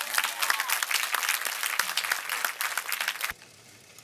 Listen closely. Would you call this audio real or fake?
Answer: real